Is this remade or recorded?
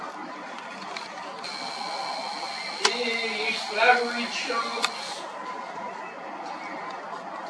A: recorded